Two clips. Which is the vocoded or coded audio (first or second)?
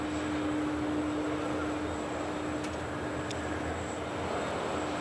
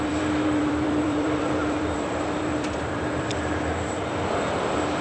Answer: second